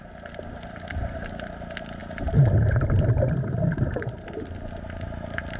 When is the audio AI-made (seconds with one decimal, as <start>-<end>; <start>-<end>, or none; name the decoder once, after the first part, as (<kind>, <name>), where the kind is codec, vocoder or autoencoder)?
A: none